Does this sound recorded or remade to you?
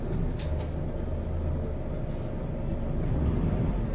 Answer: recorded